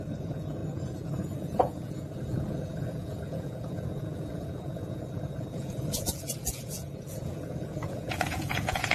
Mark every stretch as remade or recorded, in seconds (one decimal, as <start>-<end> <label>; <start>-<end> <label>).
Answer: 0.0-8.9 remade